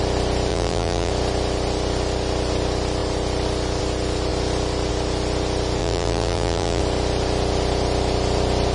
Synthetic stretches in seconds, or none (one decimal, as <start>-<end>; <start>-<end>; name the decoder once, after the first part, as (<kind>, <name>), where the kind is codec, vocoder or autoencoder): 0.5-1.1 (vocoder, BigVGAN v2); 5.8-6.8